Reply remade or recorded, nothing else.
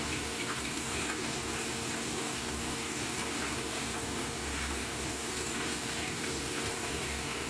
remade